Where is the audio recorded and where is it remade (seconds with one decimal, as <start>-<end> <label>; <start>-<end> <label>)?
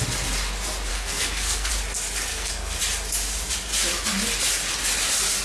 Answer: 0.0-0.9 recorded; 0.9-1.7 remade; 1.7-2.3 recorded; 2.3-2.8 remade; 2.8-5.4 recorded